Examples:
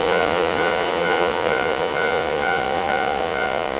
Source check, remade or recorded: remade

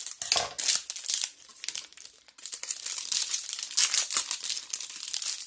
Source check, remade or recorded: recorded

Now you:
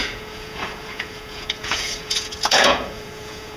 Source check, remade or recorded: remade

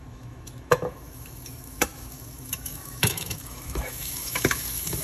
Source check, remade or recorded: remade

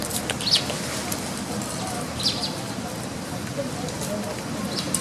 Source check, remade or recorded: recorded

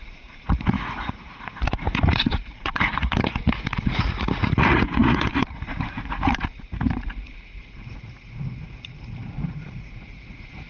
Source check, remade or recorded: remade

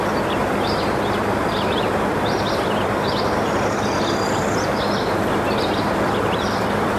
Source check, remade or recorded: recorded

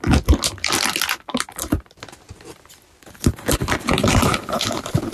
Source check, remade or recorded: recorded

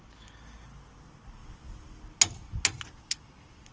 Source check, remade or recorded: recorded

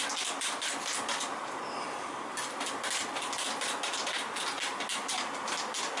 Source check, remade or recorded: recorded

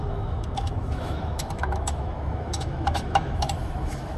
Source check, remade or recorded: remade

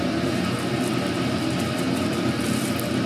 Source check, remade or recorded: recorded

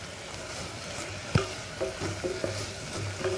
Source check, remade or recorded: recorded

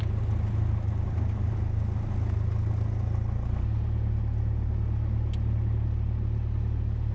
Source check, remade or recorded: recorded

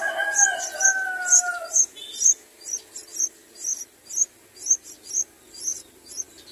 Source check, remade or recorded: recorded